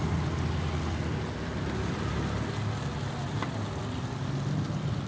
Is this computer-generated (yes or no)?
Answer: no